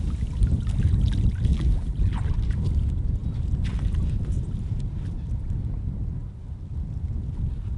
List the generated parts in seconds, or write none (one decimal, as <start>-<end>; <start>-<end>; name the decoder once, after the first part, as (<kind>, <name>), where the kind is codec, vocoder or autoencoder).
1.5-2.1 (vocoder, BigVGAN v2)